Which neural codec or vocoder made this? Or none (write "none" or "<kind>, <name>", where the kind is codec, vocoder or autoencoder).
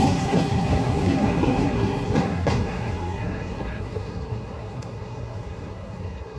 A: codec, SNAC